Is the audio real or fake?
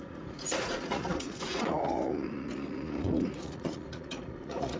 fake